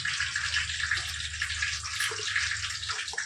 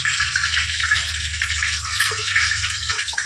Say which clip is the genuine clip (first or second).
first